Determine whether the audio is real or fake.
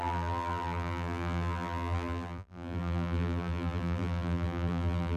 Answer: fake